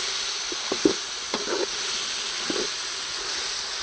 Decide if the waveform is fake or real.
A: real